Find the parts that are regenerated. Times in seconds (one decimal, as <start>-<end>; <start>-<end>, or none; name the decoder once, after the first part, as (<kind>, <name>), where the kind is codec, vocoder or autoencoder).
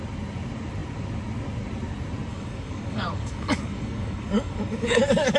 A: 2.3-5.4 (codec, DAC)